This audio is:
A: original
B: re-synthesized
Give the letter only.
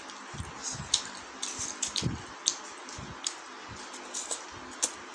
A